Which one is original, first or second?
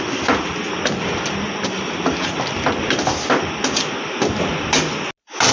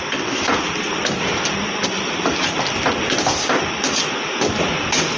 first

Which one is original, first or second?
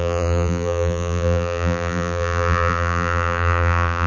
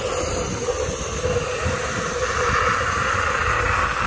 second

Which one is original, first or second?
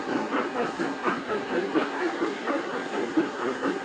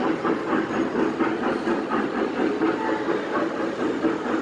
second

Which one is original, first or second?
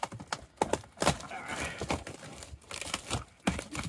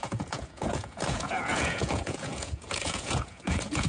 first